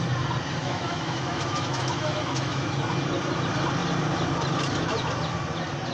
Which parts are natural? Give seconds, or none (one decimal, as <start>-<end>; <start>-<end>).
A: 0.0-0.6; 2.8-5.9